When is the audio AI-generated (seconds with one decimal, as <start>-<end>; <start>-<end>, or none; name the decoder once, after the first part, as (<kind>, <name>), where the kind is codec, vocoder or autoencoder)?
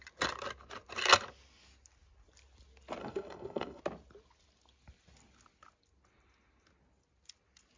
3.0-3.8 (codec, SNAC)